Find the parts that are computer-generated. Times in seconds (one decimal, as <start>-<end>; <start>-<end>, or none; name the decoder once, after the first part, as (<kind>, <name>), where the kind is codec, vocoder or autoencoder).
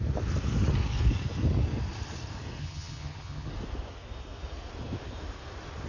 2.6-3.5 (vocoder, HiFi-GAN)